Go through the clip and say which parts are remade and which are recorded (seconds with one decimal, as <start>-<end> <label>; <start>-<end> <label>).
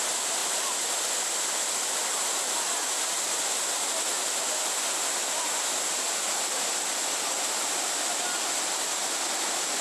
0.0-0.4 recorded; 0.4-2.9 remade; 2.9-9.8 recorded